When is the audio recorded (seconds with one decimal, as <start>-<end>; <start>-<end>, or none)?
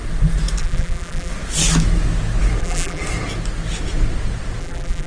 0.0-0.6; 1.3-2.6; 3.0-4.6